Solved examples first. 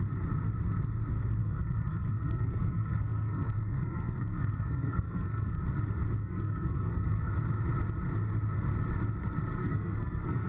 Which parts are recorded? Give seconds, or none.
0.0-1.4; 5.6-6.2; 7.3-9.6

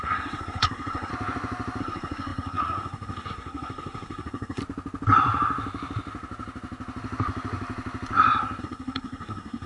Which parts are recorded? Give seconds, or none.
1.1-1.8; 4.6-8.6

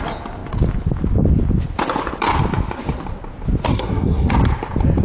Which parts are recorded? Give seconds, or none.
0.0-3.7; 4.3-5.0

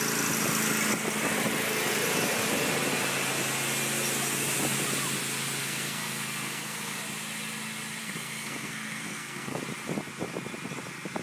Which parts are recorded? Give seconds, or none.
0.0-5.6; 7.0-8.0; 9.6-11.2

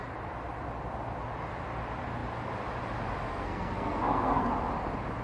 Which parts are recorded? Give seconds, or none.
0.0-3.3; 4.5-5.2